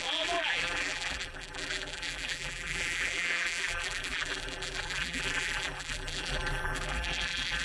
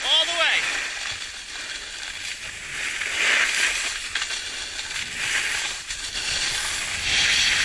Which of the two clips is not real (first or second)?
first